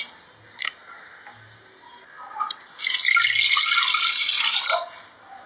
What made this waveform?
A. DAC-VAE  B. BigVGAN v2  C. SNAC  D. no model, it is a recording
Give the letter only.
D